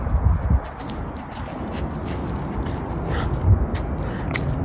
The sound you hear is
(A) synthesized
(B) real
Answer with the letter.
B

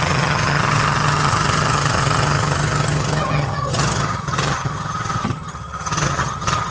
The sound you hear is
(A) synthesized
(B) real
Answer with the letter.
A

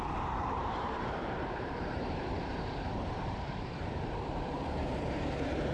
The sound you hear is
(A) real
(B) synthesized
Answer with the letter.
B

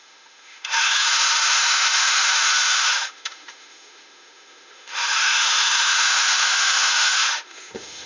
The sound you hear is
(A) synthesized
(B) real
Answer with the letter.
A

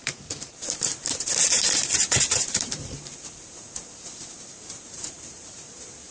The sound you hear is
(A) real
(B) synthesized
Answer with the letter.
B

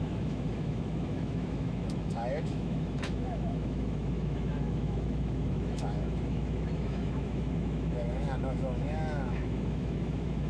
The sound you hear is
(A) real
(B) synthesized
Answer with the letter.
B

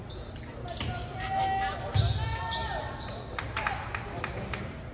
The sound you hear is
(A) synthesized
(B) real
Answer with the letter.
B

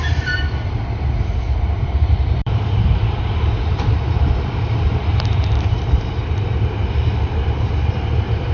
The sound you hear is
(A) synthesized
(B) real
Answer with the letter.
A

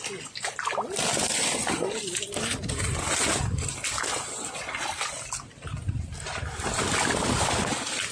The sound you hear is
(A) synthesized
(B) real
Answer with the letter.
B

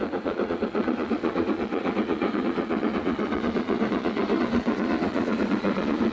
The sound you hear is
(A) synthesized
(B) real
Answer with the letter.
A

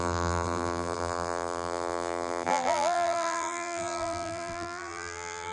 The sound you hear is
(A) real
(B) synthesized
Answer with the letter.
B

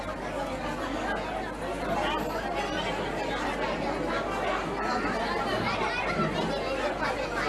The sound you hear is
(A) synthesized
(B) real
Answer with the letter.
B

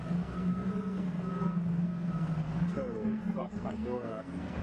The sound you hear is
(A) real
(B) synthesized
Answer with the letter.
B